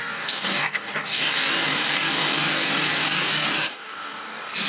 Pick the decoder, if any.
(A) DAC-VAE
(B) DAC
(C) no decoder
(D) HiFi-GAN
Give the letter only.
B